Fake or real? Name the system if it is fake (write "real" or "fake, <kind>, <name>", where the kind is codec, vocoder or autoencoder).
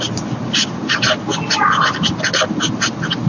real